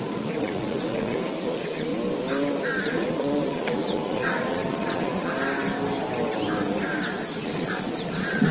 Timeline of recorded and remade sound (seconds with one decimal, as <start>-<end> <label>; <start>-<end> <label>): 0.0-1.9 remade; 1.9-2.8 recorded; 2.8-5.3 remade; 5.3-7.4 recorded; 7.4-8.5 remade